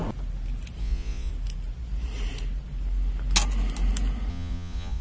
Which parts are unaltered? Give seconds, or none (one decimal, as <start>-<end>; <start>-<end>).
0.0-0.8; 1.3-4.3